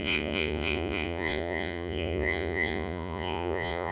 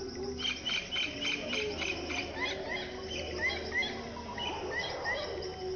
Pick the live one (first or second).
second